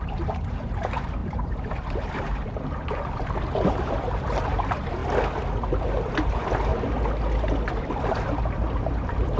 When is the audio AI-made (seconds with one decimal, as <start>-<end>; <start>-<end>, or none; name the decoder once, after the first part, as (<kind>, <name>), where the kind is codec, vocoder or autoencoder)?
0.0-5.0 (vocoder, BigVGAN v2); 6.1-6.7; 7.8-9.4